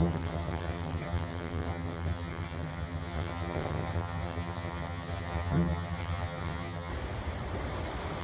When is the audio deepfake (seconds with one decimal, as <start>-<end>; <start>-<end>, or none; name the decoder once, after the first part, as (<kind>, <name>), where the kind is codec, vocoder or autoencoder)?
0.0-6.9 (vocoder, HiFi-GAN)